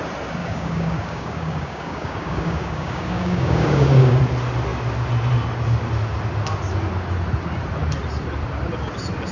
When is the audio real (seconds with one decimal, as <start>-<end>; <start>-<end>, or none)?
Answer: 0.0-0.4; 4.2-9.3